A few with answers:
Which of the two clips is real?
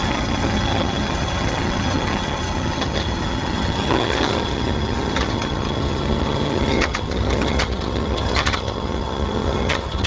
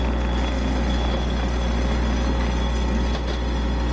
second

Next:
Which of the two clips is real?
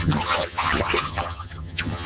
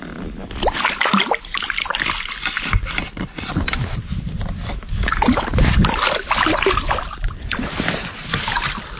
second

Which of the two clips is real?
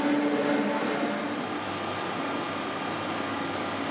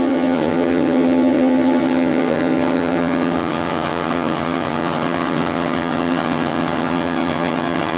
first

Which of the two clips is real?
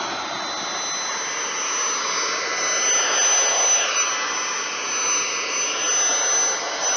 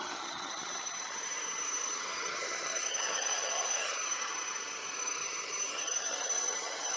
first